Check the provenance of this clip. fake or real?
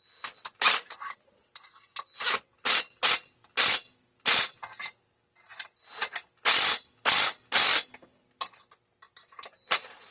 real